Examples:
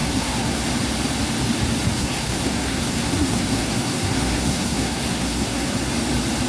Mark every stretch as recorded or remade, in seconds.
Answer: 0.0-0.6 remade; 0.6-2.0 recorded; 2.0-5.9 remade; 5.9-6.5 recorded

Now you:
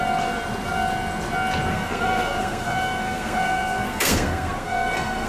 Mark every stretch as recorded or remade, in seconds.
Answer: 0.0-1.7 recorded; 1.7-5.3 remade

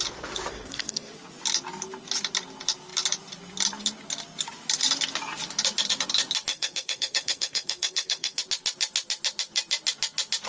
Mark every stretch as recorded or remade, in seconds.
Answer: 0.0-0.5 recorded; 0.5-1.1 remade; 1.1-6.5 recorded; 6.5-8.4 remade; 8.4-10.5 recorded

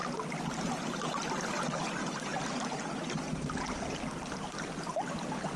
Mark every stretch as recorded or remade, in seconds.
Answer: 0.0-5.6 recorded

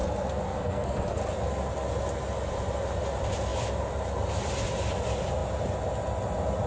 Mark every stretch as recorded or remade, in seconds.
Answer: 0.0-1.2 remade; 1.2-6.7 recorded

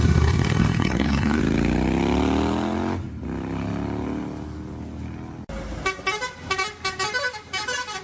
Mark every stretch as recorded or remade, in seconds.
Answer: 0.0-1.4 remade; 1.4-8.0 recorded

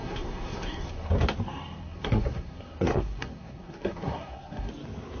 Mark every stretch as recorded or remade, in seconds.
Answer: 0.0-1.1 remade; 1.1-1.8 recorded; 1.8-4.7 remade; 4.7-5.2 recorded

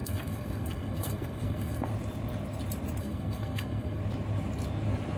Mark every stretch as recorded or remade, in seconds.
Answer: 0.0-1.9 remade; 1.9-3.0 recorded; 3.0-4.0 remade; 4.0-5.2 recorded